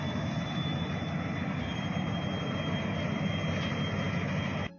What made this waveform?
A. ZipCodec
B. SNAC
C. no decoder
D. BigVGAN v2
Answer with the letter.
C